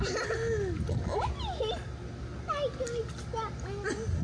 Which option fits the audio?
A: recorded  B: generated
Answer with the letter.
A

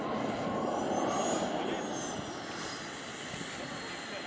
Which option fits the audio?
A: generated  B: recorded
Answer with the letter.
B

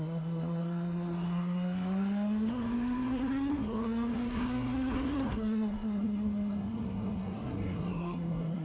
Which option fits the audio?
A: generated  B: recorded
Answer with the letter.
A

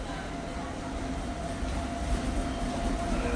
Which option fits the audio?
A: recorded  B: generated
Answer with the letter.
A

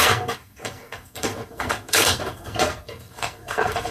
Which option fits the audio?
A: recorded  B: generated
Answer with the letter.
B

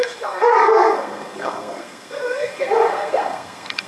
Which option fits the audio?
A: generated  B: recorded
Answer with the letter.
A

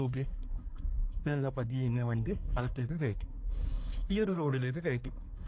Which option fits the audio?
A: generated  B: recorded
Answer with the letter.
A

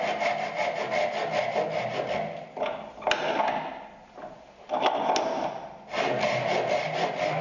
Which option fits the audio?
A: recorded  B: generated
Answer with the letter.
A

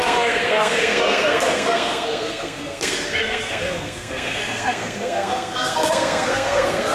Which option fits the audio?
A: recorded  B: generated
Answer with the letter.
B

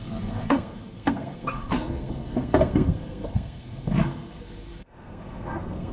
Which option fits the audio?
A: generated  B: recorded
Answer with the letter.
A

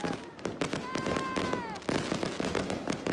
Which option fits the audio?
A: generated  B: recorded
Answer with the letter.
B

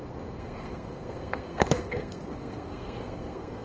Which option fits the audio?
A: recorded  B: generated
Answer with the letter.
B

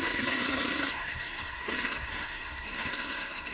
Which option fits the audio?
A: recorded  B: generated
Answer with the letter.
B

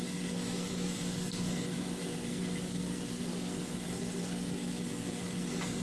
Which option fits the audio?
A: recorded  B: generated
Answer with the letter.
B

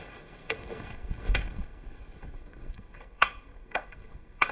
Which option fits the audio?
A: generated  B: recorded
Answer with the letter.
A